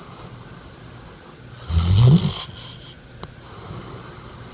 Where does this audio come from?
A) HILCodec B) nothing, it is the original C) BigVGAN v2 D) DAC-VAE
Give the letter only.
B